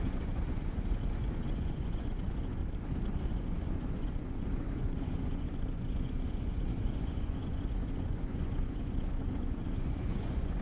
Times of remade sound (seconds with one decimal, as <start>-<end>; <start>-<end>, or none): 0.0-2.6; 3.1-10.6